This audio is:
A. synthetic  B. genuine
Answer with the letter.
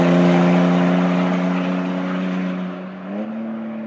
B